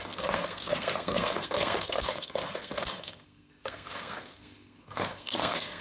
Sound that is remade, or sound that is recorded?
remade